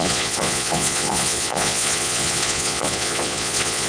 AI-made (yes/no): yes